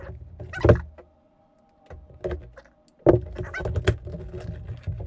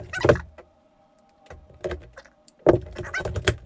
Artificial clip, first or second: second